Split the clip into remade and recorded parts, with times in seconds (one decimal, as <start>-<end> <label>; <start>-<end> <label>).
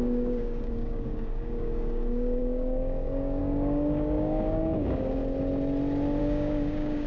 0.0-5.2 remade; 5.2-6.2 recorded; 6.2-7.1 remade